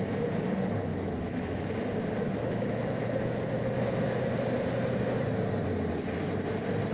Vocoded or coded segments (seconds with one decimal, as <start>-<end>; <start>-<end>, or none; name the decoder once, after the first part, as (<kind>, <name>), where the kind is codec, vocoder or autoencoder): 0.9-1.6 (autoencoder, DAC-VAE); 2.4-4.2